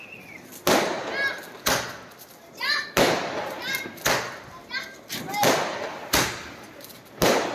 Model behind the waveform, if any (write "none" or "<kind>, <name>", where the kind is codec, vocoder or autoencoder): none